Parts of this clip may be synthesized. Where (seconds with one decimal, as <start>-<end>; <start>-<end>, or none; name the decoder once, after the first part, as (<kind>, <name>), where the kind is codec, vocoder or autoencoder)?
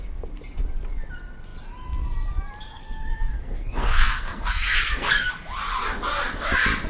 2.7-5.3 (codec, SNAC)